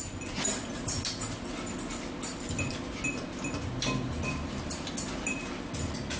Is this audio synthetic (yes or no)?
no